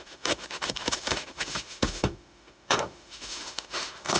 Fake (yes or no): yes